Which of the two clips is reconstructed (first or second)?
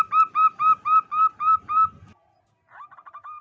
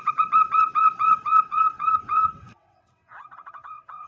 second